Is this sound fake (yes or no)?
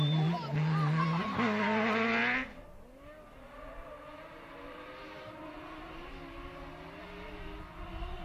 no